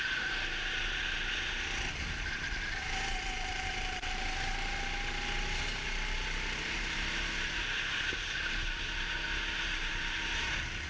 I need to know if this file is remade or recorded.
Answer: remade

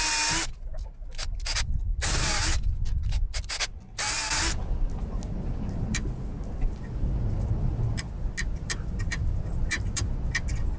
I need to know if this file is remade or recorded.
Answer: recorded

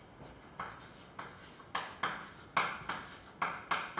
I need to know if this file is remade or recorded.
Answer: recorded